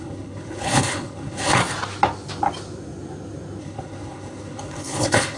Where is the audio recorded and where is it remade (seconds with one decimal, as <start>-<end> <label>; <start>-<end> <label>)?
0.0-1.6 remade; 1.6-3.6 recorded; 3.6-5.4 remade